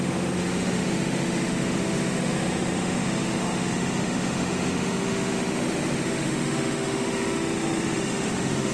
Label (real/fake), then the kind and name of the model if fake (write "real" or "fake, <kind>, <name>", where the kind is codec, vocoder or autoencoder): fake, autoencoder, DAC-VAE